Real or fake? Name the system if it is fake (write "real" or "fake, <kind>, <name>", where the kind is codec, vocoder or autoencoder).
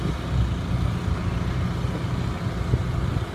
real